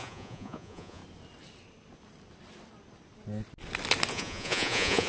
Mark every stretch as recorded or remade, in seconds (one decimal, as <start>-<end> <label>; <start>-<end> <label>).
0.0-1.0 remade; 1.0-4.1 recorded; 4.1-5.1 remade